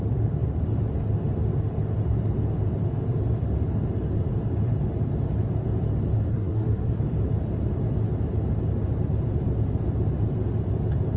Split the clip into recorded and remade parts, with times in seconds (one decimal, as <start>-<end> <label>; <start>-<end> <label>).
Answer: 0.0-6.3 recorded; 6.3-7.0 remade; 7.0-11.2 recorded